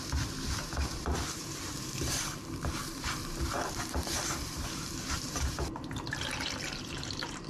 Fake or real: fake